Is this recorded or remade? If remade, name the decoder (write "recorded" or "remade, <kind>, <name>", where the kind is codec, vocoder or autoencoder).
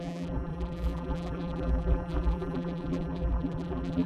remade, vocoder, BigVGAN v2